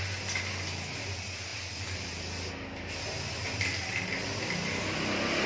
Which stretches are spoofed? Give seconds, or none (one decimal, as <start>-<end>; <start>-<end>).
none